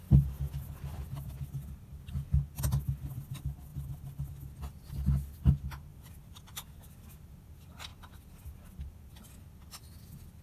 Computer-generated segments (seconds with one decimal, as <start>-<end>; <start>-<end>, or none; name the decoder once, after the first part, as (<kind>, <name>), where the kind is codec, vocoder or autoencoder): 5.9-6.7 (vocoder, BigVGAN v2)